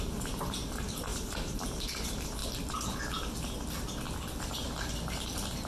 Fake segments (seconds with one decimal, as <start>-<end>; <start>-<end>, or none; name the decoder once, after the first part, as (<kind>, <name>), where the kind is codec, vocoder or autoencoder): 0.0-2.4 (vocoder, BigVGAN v2); 4.4-5.7